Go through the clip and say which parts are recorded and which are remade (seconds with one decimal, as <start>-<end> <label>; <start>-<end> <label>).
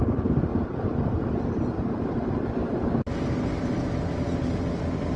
0.0-5.2 recorded